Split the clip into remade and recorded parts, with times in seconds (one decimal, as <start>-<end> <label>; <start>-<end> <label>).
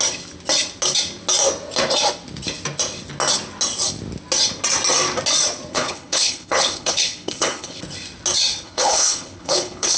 0.0-5.7 recorded; 5.7-7.8 remade; 7.8-8.5 recorded; 8.5-10.0 remade